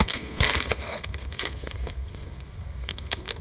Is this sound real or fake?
fake